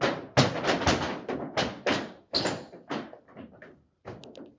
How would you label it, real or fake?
real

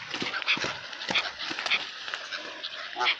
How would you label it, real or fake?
real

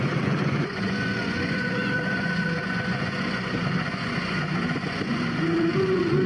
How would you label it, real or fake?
fake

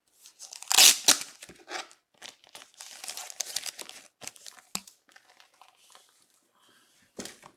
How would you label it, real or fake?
real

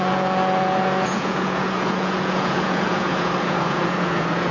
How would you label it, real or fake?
fake